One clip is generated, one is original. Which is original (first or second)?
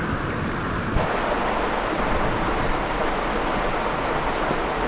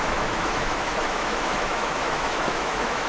first